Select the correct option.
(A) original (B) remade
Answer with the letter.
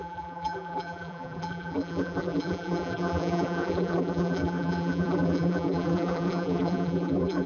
B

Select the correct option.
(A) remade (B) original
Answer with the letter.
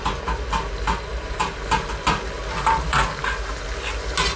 B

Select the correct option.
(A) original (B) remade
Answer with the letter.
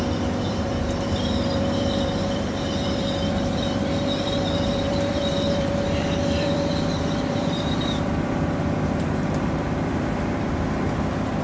B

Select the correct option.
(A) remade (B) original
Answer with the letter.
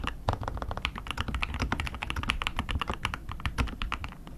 A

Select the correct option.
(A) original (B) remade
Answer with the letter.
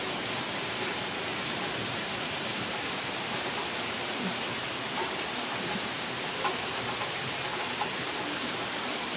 B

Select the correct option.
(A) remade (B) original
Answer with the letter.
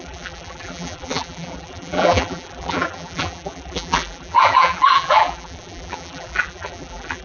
A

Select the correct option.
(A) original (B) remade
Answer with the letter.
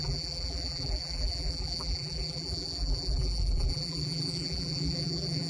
B